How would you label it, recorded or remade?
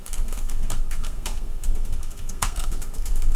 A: remade